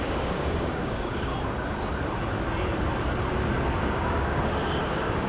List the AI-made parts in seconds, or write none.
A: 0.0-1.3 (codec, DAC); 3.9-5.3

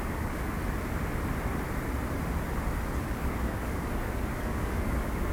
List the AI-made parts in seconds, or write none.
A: 0.0-0.6 (codec, DAC); 3.1-5.3

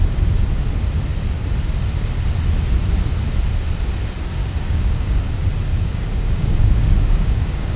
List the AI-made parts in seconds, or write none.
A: 4.4-5.2 (codec, DAC); 5.7-7.8

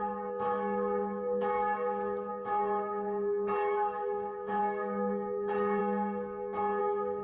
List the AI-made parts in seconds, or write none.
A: 0.0-5.8 (codec, DAC); 6.8-7.2

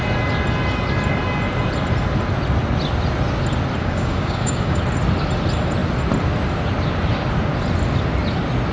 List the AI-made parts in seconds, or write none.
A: 3.8-4.8 (codec, DAC)